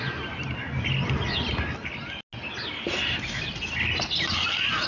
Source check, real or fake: real